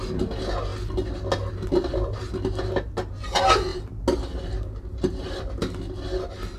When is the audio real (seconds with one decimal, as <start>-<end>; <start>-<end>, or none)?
0.0-6.6